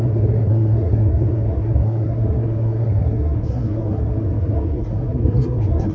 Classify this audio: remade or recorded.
remade